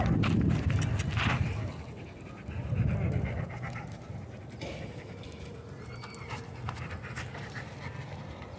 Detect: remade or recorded recorded